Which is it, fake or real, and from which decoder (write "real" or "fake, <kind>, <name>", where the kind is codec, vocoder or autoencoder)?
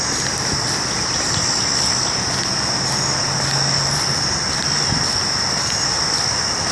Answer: real